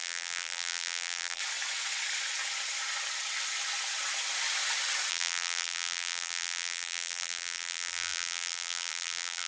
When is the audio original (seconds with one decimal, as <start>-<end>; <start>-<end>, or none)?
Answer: 1.4-5.1